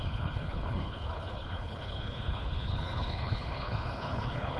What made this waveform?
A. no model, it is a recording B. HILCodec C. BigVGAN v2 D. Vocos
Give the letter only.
B